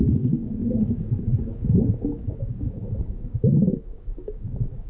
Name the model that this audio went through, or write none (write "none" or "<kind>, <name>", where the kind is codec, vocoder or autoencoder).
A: codec, DAC